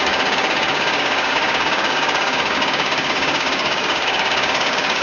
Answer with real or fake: fake